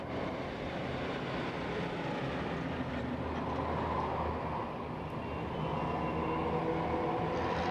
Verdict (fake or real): real